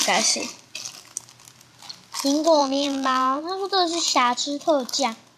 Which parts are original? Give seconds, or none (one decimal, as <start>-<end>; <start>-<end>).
0.0-2.6; 3.4-5.4